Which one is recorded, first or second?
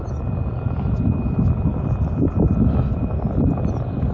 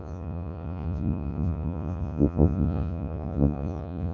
first